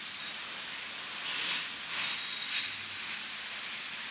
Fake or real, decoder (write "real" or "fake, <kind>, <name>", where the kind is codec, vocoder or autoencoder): real